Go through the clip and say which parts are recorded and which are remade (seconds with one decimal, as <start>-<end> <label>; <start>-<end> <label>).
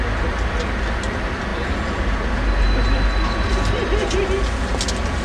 0.0-5.2 recorded